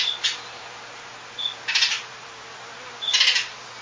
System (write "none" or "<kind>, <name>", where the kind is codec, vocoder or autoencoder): none